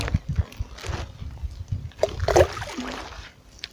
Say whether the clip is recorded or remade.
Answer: recorded